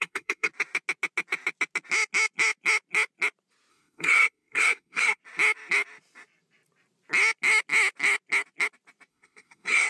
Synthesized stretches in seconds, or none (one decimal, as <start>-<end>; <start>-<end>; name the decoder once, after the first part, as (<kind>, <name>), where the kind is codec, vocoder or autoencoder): 0.0-0.5 (codec, SNAC); 3.7-5.2; 9.1-9.9